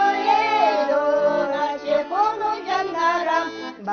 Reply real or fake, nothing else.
real